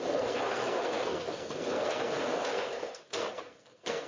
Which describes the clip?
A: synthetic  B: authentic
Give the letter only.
A